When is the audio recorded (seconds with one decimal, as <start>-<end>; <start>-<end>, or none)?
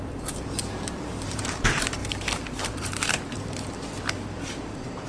none